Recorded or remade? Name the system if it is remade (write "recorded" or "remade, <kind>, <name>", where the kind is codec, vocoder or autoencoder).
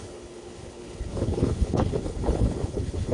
remade, codec, HILCodec